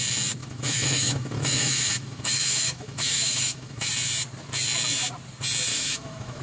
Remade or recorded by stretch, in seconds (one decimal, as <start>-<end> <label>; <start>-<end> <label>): 0.0-0.4 recorded; 0.4-3.9 remade; 3.9-5.7 recorded; 5.7-6.4 remade